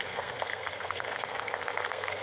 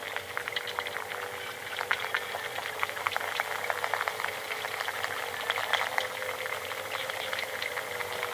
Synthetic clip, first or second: first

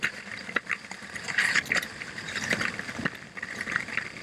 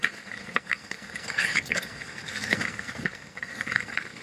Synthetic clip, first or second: second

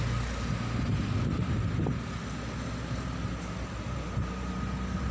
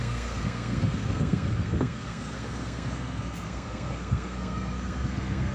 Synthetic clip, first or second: second